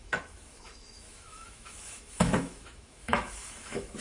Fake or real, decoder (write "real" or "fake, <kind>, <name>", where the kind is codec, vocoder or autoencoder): fake, autoencoder, DAC-VAE